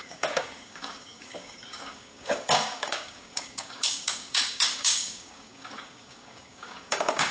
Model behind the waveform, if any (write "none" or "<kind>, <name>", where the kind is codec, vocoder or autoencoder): codec, DAC